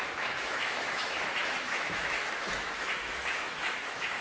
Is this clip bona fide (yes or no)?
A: no